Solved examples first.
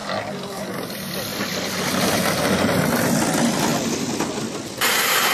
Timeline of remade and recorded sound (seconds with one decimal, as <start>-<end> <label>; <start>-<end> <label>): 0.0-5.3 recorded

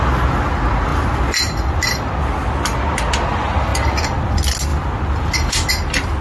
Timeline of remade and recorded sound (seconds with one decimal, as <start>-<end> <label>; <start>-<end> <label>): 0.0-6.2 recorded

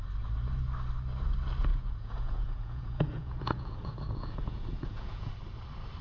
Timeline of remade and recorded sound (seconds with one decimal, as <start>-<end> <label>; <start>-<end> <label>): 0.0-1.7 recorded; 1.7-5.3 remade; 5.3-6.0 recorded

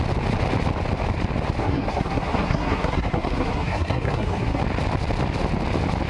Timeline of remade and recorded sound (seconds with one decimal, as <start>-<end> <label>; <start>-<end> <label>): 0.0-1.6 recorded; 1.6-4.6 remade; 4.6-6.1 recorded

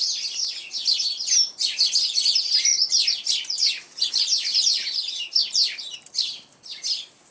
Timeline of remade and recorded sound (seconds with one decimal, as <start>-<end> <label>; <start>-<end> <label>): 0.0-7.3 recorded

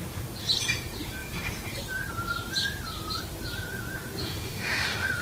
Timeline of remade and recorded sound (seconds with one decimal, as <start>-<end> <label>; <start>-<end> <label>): 0.0-4.2 recorded; 4.2-5.2 remade